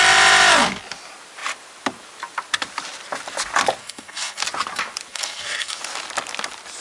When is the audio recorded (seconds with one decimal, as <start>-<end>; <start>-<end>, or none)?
0.0-3.8; 4.4-5.1; 5.8-6.8